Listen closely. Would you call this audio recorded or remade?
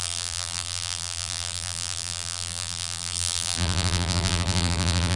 remade